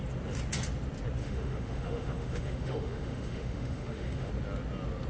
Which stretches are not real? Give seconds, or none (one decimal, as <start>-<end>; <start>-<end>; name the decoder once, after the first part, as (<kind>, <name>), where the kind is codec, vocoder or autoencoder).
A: 1.2-4.3 (autoencoder, DAC-VAE)